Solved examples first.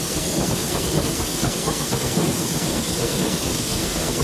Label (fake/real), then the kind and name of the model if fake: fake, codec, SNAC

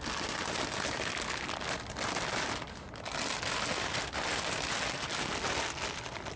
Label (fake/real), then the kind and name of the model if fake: real